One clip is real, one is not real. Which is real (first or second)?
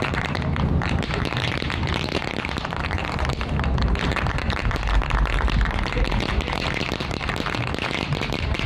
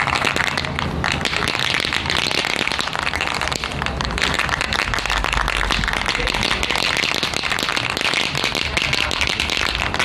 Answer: second